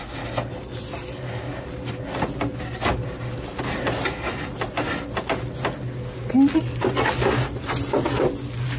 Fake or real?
real